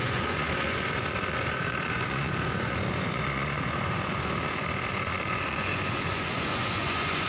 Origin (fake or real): fake